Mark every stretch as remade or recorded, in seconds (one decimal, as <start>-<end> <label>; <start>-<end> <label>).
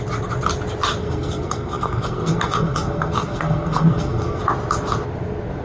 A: 0.0-1.0 recorded; 1.0-4.4 remade; 4.4-5.6 recorded